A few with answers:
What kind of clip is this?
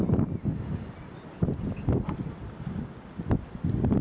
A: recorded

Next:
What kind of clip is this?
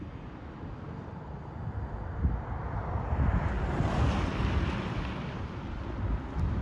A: recorded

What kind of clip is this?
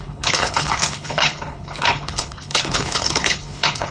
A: remade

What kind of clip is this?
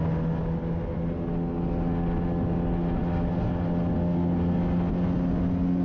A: recorded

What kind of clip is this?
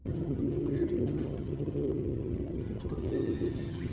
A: remade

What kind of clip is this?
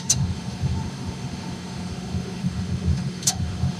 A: remade